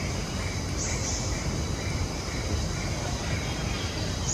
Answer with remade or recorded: recorded